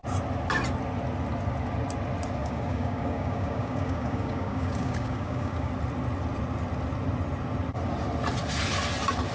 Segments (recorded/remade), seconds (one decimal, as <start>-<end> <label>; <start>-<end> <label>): 0.0-2.4 recorded; 2.4-5.7 remade; 5.7-9.3 recorded

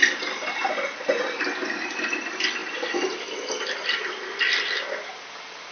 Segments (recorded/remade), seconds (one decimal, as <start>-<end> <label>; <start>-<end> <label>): 0.0-2.6 recorded; 2.6-3.1 remade; 3.1-5.7 recorded

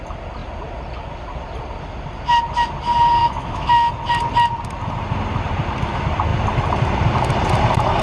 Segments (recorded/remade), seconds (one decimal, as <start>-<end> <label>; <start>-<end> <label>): 0.0-3.2 recorded; 3.2-3.9 remade; 3.9-8.0 recorded

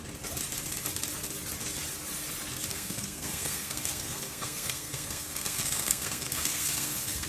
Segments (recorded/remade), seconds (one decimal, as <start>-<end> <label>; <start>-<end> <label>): 0.0-2.7 recorded; 2.7-7.3 remade

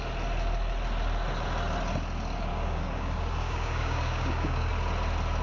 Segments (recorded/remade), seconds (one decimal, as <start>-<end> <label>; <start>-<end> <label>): 0.0-2.5 recorded; 2.5-4.7 remade; 4.7-5.4 recorded